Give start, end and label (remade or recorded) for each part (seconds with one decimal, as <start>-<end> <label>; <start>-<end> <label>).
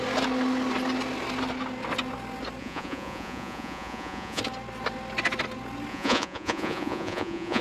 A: 0.0-2.6 recorded; 2.6-4.4 remade; 4.4-5.9 recorded; 5.9-7.6 remade